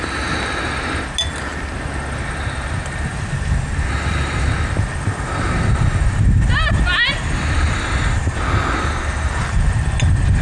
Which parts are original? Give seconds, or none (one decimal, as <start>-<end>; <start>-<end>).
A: 0.0-10.4